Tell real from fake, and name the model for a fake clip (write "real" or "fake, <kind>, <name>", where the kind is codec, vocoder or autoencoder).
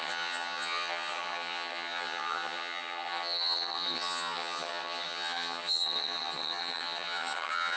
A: fake, vocoder, HiFi-GAN